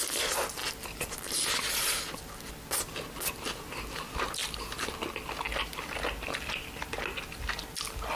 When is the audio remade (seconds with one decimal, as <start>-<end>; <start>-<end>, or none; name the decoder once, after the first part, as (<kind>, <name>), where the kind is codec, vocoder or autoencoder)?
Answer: none